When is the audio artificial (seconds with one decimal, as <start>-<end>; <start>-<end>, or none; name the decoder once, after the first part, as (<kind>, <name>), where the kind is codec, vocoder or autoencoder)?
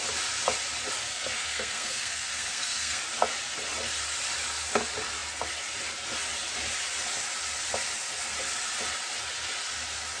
1.1-3.0 (codec, SNAC)